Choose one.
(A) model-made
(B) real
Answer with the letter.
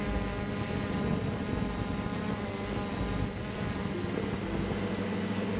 B